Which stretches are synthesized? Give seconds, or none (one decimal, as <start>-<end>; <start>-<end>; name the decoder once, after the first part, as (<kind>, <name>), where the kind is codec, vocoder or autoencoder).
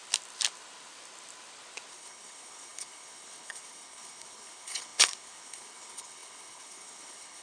1.9-7.4 (codec, HILCodec)